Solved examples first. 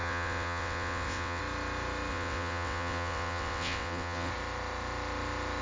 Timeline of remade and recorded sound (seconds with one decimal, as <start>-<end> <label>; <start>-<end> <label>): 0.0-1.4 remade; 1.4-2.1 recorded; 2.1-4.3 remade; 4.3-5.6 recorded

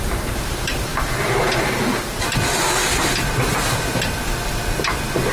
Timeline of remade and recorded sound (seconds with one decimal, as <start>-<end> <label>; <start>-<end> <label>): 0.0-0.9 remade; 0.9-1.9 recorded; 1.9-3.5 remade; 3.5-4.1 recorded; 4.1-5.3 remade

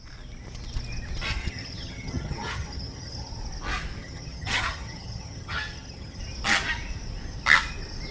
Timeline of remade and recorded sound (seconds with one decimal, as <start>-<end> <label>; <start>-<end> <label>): 0.0-1.4 recorded; 1.4-3.3 remade; 3.3-4.0 recorded; 4.0-6.2 remade; 6.2-8.1 recorded

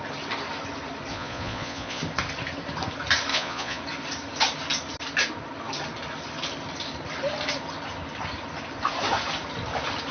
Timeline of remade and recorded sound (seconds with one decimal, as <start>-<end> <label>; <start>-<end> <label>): 0.0-1.1 recorded; 1.1-2.0 remade; 2.0-3.3 recorded; 3.3-3.8 remade; 3.8-10.1 recorded

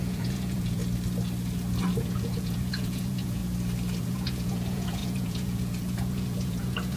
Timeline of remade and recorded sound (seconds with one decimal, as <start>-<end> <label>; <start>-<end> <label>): 0.0-0.8 remade; 0.8-2.0 recorded; 2.0-3.4 remade; 3.4-4.0 recorded; 4.0-7.0 remade